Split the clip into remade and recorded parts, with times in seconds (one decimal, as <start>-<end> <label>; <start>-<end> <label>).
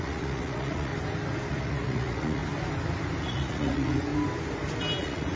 0.0-0.9 remade; 0.9-1.5 recorded; 1.5-2.4 remade; 2.4-3.2 recorded; 3.2-4.1 remade; 4.1-5.0 recorded; 5.0-5.4 remade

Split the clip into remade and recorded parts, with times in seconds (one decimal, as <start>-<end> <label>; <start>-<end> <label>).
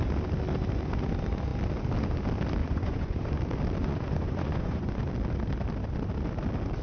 0.0-2.6 recorded; 2.6-3.4 remade; 3.4-3.8 recorded; 3.8-5.0 remade; 5.0-6.8 recorded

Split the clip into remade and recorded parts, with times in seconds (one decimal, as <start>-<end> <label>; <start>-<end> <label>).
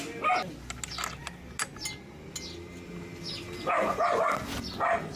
0.0-5.2 recorded